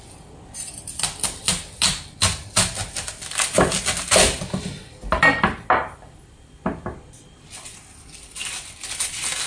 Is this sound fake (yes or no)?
no